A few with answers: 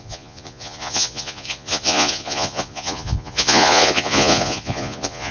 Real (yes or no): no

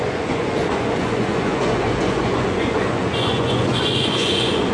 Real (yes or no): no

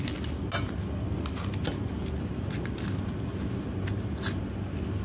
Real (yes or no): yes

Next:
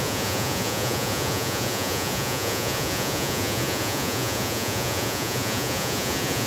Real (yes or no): no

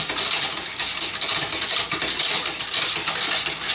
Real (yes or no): yes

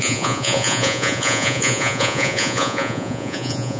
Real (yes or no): no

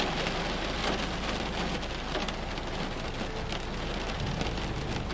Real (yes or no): yes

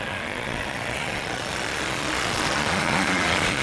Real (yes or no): no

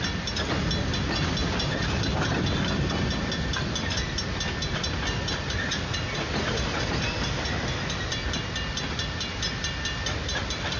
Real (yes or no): yes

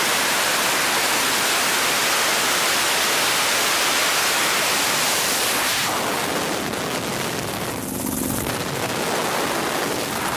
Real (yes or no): yes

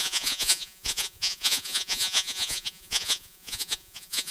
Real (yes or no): no